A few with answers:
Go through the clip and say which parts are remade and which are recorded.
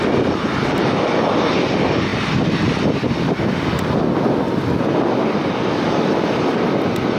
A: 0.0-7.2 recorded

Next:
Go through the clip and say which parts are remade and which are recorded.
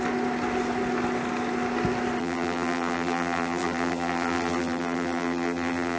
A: 0.0-2.2 recorded; 2.2-6.0 remade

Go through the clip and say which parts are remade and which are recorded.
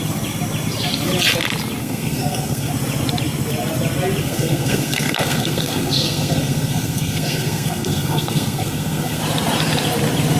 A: 0.0-1.8 recorded; 1.8-2.7 remade; 2.7-4.2 recorded; 4.2-9.2 remade; 9.2-10.4 recorded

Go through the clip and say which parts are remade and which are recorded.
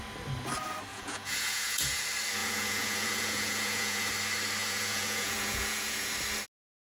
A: 0.0-0.9 recorded; 0.9-2.0 remade; 2.0-2.4 recorded; 2.4-4.1 remade; 4.1-4.6 recorded; 4.6-6.1 remade; 6.1-6.8 recorded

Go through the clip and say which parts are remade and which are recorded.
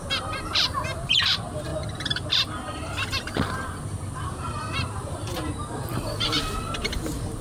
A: 0.0-1.7 remade; 1.7-5.8 recorded; 5.8-7.4 remade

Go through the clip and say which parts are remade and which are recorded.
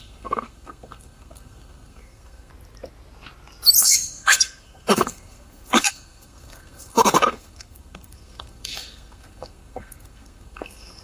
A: 0.0-2.5 remade; 2.5-3.8 recorded; 3.8-11.0 remade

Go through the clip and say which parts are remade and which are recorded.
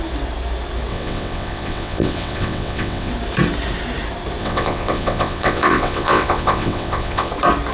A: 0.0-0.9 recorded; 0.9-3.1 remade; 3.1-4.4 recorded; 4.4-7.3 remade; 7.3-7.7 recorded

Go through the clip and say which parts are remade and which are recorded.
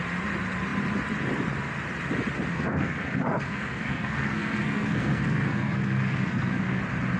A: 0.0-2.5 recorded; 2.5-6.8 remade; 6.8-7.2 recorded